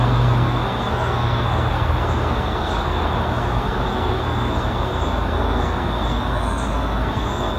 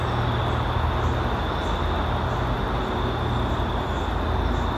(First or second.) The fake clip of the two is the first